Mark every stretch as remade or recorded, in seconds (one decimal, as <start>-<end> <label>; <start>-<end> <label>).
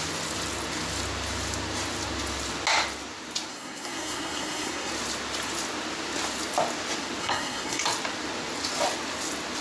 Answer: 0.0-3.5 recorded; 3.5-4.9 remade; 4.9-7.2 recorded; 7.2-7.8 remade; 7.8-9.6 recorded